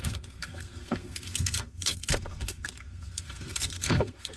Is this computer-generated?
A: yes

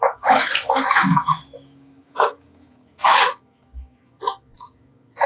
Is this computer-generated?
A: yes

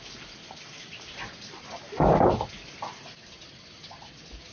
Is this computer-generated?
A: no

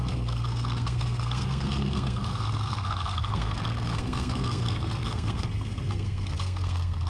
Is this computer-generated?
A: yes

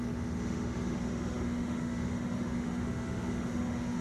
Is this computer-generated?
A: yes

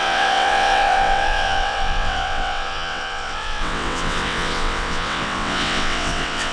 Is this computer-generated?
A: yes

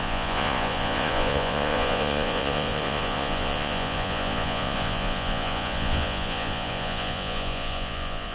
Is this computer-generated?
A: yes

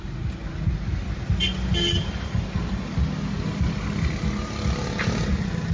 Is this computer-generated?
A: no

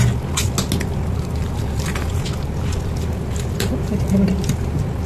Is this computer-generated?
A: no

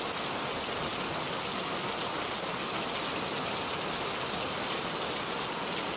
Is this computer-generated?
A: no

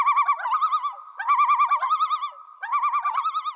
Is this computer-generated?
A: no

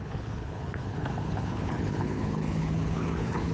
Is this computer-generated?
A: yes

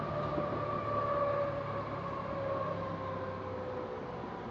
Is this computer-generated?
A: no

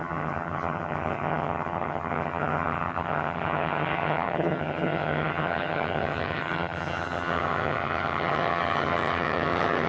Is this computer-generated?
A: yes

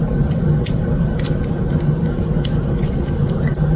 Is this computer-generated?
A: no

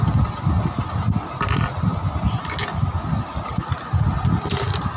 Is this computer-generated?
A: no